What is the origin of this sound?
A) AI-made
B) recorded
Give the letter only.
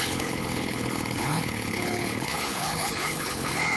A